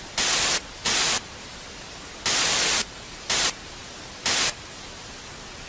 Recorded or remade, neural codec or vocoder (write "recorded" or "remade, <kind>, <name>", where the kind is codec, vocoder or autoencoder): recorded